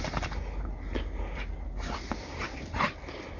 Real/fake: real